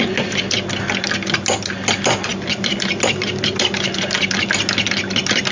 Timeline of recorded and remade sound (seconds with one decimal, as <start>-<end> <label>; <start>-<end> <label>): 0.0-5.5 recorded